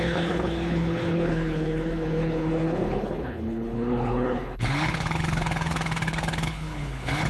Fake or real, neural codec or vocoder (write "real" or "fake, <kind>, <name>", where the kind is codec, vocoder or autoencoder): fake, codec, HILCodec